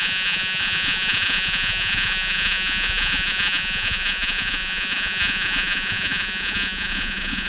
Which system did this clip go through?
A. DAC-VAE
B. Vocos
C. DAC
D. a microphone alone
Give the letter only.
B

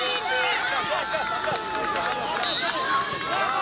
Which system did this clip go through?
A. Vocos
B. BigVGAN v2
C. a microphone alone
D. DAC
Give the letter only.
C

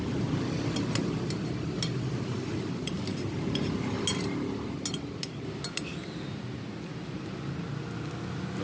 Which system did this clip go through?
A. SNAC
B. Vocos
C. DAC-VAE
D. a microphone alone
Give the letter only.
D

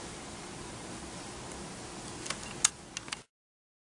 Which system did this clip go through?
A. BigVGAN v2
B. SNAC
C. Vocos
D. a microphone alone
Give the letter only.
D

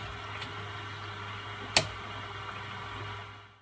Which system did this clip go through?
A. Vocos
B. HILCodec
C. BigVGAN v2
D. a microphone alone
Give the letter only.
D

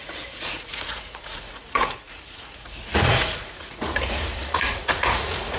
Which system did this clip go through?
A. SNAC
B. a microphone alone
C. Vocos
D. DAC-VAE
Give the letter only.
C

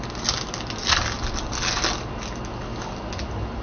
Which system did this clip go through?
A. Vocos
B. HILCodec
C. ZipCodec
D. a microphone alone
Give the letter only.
D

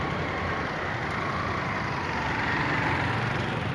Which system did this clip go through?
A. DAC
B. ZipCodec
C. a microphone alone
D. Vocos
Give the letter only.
C